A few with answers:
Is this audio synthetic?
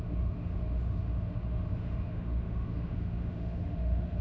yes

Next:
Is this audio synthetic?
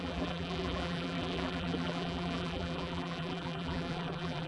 yes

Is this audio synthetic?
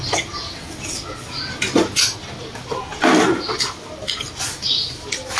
no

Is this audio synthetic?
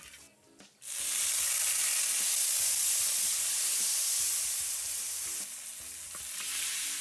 no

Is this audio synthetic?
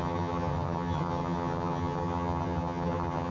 yes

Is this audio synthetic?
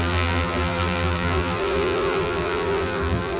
yes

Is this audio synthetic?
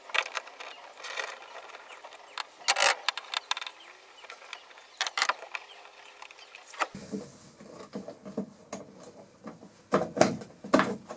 no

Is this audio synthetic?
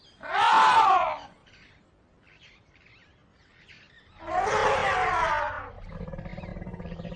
no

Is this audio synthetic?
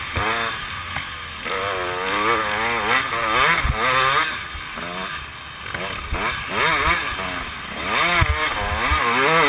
no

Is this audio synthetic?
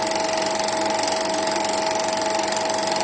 no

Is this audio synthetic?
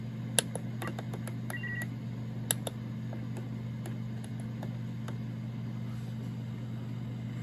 no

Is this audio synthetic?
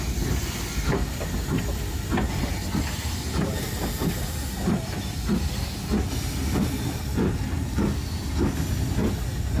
no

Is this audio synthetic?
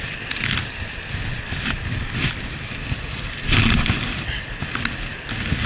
no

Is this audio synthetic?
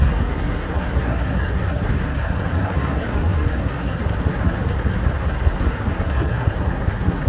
yes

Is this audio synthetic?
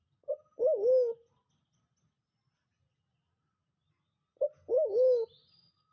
no